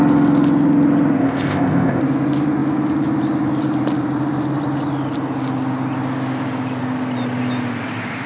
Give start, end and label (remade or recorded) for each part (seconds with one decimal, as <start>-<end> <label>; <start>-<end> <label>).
0.0-1.2 recorded; 1.2-2.0 remade; 2.0-8.3 recorded